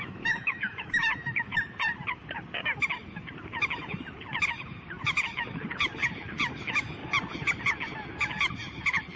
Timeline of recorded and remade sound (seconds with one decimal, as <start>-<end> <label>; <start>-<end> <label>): 0.0-1.5 remade; 1.5-6.6 recorded; 6.6-7.0 remade; 7.0-9.2 recorded